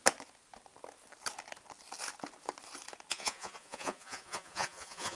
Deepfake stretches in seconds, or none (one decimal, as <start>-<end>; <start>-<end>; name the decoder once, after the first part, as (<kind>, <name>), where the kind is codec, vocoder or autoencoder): 3.1-5.1 (vocoder, Vocos)

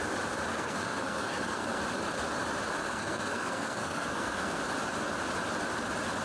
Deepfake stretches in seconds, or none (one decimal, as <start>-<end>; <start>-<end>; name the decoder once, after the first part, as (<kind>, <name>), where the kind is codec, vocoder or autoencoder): 0.5-1.8 (codec, SNAC); 2.8-4.6

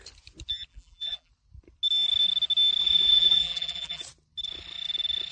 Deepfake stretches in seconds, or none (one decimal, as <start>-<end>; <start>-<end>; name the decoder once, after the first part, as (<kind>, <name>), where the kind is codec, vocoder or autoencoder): 0.7-1.3 (vocoder, BigVGAN v2); 2.8-4.0

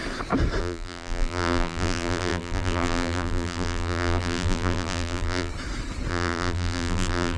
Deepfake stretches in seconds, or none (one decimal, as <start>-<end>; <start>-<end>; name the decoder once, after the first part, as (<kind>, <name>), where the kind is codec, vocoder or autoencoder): 0.6-5.5 (vocoder, BigVGAN v2); 6.1-7.4

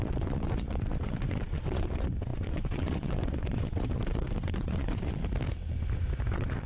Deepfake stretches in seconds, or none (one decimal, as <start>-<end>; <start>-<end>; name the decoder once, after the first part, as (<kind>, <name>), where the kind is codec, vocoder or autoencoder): 0.0-5.2 (vocoder, WaveNeXt); 6.3-6.7

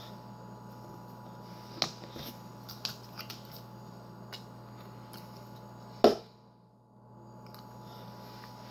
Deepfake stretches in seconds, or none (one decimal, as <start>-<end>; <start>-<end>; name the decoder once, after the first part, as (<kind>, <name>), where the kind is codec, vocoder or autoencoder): none

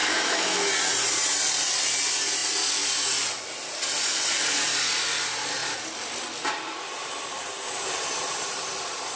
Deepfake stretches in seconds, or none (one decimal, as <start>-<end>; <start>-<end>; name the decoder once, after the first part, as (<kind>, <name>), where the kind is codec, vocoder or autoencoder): 0.0-0.7 (autoencoder, DAC-VAE)

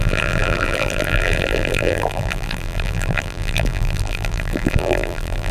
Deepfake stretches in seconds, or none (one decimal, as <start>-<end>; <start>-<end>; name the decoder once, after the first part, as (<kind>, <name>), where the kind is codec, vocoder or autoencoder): 0.0-5.5 (vocoder, BigVGAN v2)